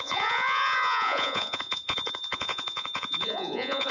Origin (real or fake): fake